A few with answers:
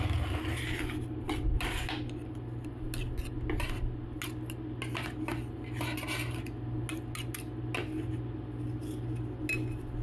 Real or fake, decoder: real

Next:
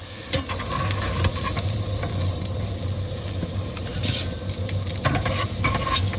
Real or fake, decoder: real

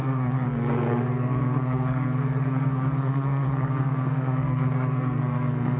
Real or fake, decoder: fake, codec, SNAC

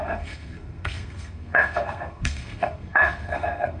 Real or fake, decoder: fake, codec, SNAC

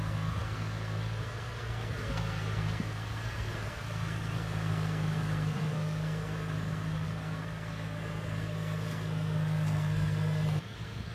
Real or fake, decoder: fake, codec, SNAC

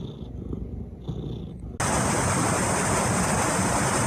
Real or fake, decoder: real